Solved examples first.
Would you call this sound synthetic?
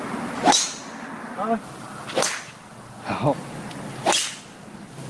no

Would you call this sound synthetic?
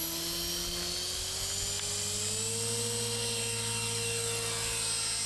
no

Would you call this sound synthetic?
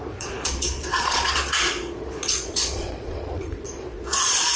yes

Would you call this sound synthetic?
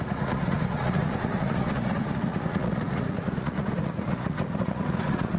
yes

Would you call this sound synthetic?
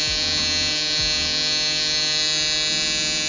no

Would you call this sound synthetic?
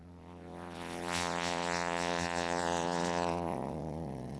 yes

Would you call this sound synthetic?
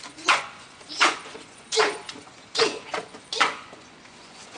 yes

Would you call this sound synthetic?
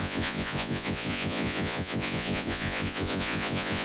yes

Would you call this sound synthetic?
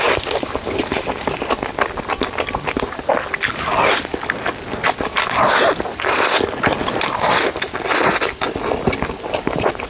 no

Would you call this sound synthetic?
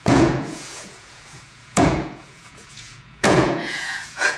yes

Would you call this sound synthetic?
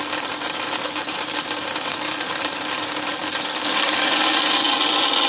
no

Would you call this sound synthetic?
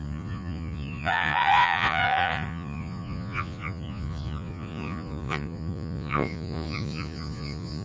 yes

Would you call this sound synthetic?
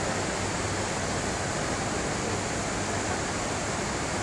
no